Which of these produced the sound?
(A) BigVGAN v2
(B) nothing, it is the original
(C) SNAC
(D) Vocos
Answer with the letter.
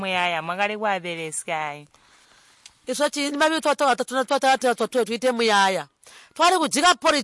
B